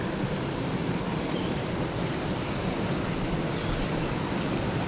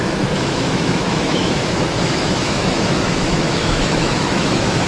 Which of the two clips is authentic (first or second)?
first